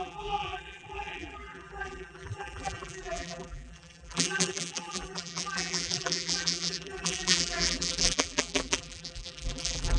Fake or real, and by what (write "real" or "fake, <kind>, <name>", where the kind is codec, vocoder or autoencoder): fake, vocoder, BigVGAN v2